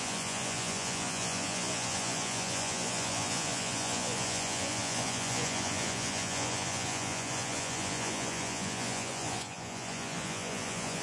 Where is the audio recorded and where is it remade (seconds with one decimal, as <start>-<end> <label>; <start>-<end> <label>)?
0.0-11.0 remade